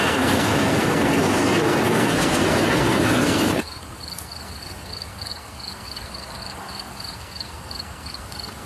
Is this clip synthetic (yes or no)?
yes